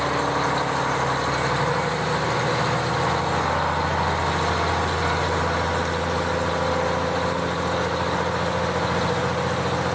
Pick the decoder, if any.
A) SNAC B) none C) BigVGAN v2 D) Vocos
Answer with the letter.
B